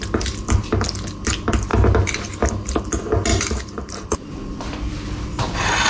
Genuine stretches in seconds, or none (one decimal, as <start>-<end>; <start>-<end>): 0.0-3.3; 4.3-5.9